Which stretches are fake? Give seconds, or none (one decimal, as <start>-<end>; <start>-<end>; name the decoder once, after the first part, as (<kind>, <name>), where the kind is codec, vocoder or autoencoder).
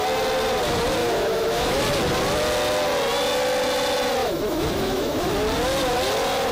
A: 1.0-1.8 (autoencoder, DAC-VAE); 4.2-5.3